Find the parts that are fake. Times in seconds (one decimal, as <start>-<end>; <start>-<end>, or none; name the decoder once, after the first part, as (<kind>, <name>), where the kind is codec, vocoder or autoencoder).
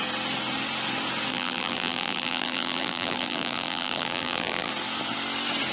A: 1.3-4.7 (vocoder, BigVGAN v2)